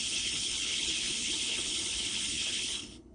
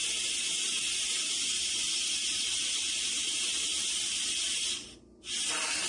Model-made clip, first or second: first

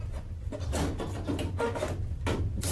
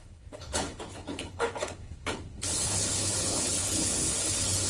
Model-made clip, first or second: second